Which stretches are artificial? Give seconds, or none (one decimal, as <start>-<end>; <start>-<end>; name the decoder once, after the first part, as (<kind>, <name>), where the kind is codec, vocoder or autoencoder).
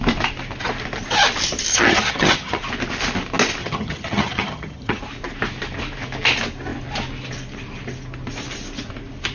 1.7-2.6 (vocoder, HiFi-GAN); 3.6-5.0